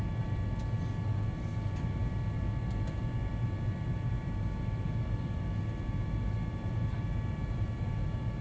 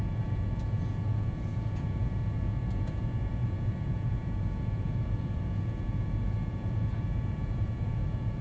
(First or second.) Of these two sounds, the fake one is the second